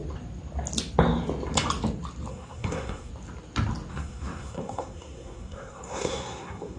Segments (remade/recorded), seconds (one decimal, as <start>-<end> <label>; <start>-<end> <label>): 0.0-2.3 recorded; 2.3-3.1 remade; 3.1-3.9 recorded; 3.9-6.8 remade